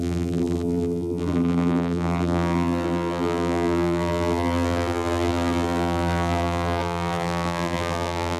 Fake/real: fake